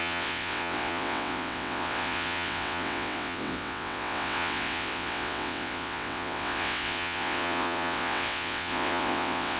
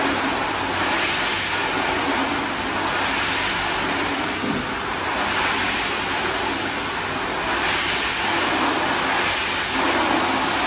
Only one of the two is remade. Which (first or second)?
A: first